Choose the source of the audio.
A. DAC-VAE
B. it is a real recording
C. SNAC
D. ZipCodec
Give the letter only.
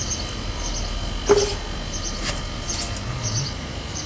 B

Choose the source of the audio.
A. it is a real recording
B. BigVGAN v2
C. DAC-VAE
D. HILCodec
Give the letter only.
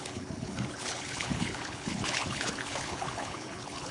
D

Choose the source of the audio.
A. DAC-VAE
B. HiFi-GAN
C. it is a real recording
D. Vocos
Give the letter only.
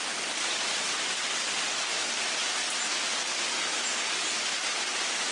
C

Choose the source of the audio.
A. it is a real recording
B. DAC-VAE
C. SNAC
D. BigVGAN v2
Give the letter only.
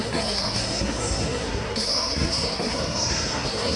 C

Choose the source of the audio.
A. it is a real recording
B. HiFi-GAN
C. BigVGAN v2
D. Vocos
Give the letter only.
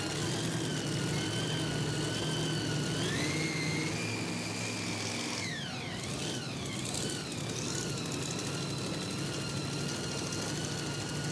A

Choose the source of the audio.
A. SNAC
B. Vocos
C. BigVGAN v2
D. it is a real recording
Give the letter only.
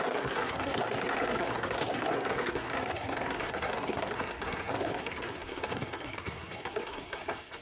A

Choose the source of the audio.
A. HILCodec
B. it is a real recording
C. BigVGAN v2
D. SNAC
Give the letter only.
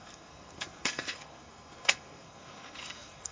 D